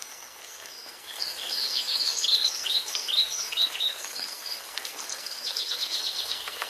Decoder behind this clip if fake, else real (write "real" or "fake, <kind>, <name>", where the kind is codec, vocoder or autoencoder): fake, codec, SNAC